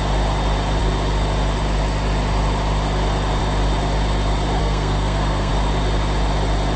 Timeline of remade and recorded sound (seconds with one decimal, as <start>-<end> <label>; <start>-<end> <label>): 0.0-4.6 recorded; 4.6-5.5 remade; 5.5-6.8 recorded